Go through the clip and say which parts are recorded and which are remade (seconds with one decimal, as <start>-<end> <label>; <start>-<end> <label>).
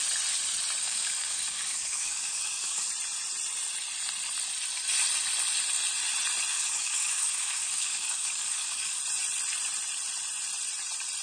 0.0-0.8 recorded; 0.8-2.9 remade; 2.9-6.5 recorded; 6.5-9.0 remade; 9.0-11.2 recorded